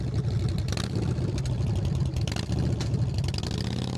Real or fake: real